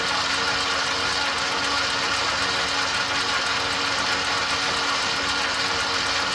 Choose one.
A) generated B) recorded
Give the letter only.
B